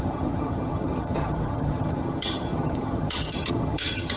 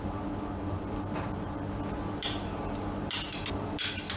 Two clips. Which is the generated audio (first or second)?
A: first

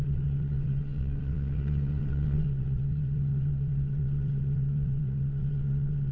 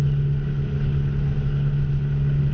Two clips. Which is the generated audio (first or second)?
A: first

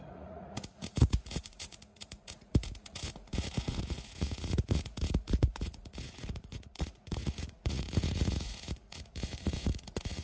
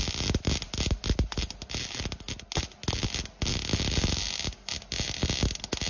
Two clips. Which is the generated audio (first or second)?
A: first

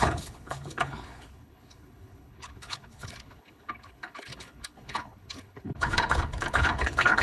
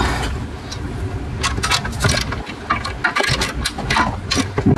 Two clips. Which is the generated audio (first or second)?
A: first